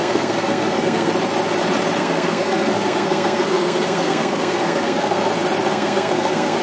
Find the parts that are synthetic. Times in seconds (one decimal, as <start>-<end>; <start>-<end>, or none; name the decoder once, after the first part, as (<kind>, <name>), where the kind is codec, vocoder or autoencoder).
0.0-1.1 (codec, SNAC); 2.0-5.3; 5.7-6.6